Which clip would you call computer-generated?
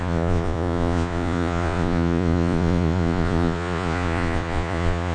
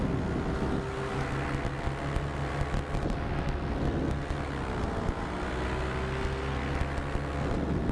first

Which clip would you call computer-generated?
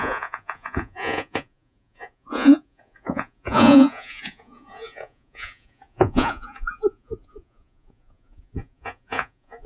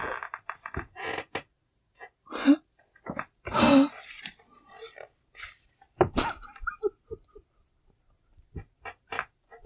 first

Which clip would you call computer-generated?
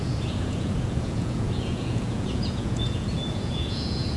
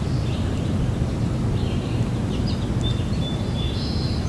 first